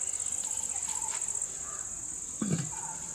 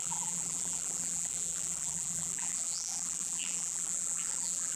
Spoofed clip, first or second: second